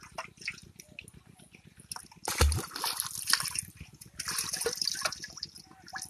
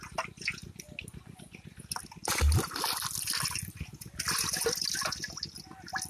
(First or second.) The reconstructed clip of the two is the first